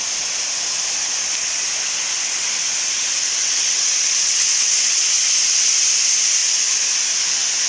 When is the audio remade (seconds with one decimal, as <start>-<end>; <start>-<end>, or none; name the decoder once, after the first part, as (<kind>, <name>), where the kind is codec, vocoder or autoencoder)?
3.4-5.1 (vocoder, WaveNeXt)